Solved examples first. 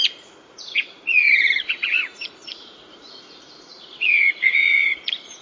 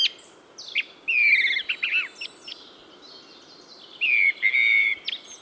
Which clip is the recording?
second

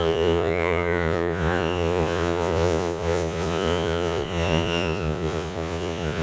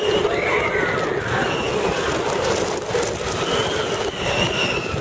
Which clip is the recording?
second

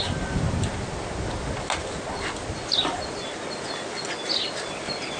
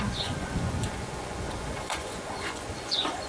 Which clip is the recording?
first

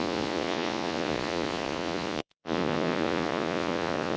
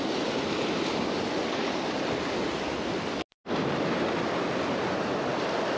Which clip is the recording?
second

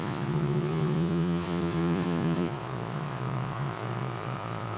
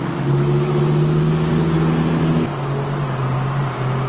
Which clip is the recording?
second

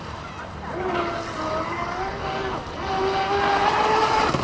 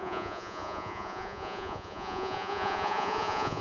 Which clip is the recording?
first